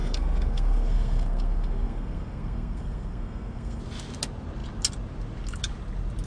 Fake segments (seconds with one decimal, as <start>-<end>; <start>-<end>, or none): 0.0-3.8